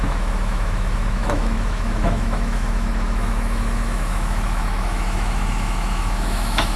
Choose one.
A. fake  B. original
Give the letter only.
A